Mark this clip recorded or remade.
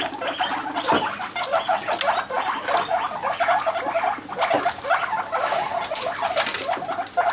recorded